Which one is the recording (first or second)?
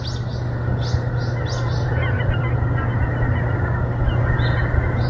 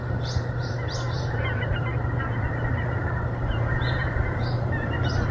first